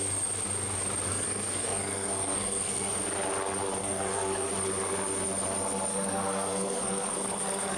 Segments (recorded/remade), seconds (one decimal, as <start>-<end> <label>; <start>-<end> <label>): 0.0-1.1 recorded; 1.1-2.9 remade; 2.9-3.8 recorded; 3.8-4.5 remade; 4.5-5.9 recorded; 5.9-7.8 remade